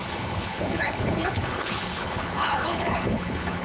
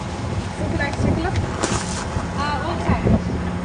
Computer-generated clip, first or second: first